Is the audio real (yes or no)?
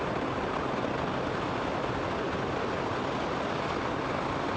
yes